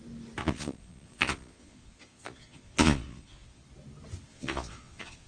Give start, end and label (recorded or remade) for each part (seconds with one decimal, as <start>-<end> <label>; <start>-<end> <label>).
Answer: 0.0-0.4 recorded; 0.4-3.6 remade; 3.6-4.3 recorded; 4.3-5.3 remade